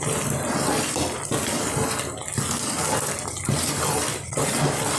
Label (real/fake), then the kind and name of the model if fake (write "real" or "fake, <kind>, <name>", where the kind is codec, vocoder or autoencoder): real